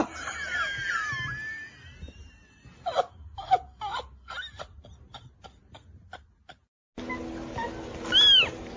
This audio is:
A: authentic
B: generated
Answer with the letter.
A